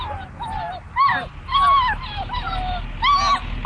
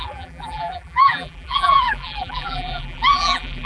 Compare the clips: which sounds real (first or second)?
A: first